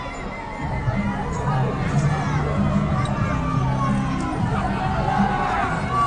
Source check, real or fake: real